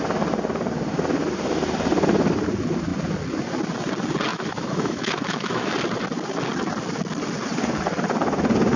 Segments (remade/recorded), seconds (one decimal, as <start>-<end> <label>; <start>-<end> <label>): 0.0-4.3 recorded; 4.3-5.7 remade; 5.7-8.8 recorded